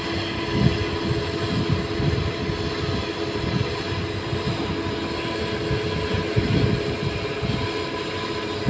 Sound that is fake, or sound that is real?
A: real